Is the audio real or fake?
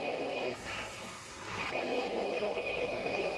fake